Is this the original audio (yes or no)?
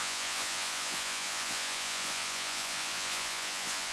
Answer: no